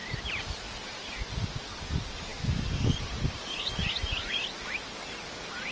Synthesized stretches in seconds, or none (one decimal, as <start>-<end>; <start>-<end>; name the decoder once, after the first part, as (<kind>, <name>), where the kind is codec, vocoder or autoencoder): none